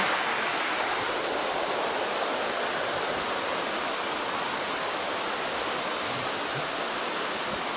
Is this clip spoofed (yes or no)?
no